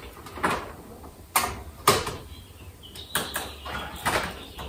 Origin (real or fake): real